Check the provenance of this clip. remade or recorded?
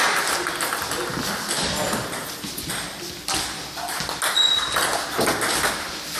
recorded